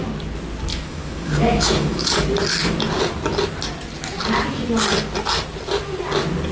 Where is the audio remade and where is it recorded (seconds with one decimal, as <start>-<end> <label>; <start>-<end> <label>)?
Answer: 0.0-0.7 recorded; 0.7-2.1 remade; 2.1-6.5 recorded